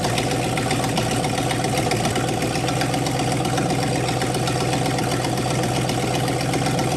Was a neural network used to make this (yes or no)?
no